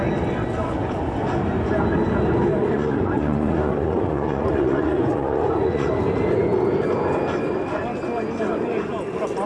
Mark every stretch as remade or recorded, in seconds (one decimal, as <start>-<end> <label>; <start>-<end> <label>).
0.0-2.5 recorded; 2.5-5.9 remade; 5.9-9.5 recorded